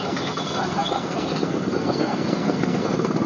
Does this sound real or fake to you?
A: fake